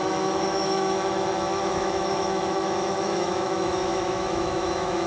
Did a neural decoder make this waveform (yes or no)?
yes